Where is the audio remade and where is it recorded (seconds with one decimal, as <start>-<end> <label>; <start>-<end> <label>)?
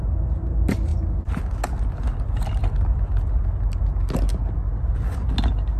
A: 0.0-5.8 recorded